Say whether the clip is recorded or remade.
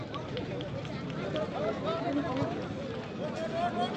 recorded